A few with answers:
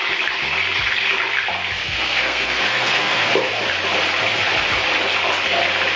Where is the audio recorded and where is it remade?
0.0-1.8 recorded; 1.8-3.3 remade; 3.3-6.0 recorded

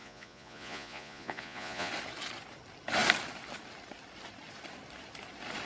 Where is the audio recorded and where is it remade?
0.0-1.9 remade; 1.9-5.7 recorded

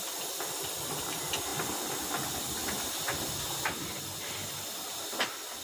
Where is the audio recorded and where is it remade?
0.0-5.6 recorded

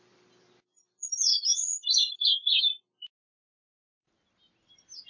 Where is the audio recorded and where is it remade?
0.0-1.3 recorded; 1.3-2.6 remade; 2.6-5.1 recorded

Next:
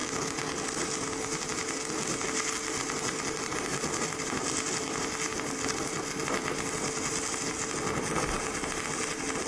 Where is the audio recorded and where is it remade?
0.0-9.5 recorded

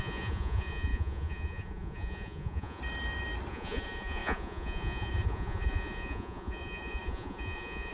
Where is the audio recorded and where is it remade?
0.0-2.8 remade; 2.8-3.5 recorded; 3.5-7.9 remade

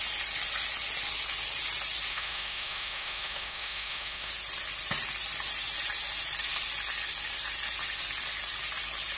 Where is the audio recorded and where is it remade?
0.0-2.1 recorded; 2.1-4.3 remade; 4.3-9.2 recorded

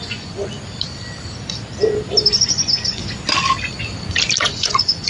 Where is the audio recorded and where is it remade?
0.0-0.4 remade; 0.4-2.3 recorded; 2.3-3.0 remade; 3.0-4.4 recorded; 4.4-5.1 remade